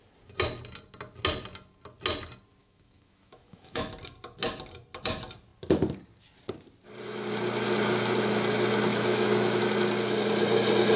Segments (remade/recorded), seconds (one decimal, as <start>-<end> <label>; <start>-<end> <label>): 0.0-2.6 recorded; 2.6-3.9 remade; 3.9-8.9 recorded; 8.9-9.6 remade; 9.6-11.0 recorded